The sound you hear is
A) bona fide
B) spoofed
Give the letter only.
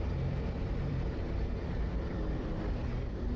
B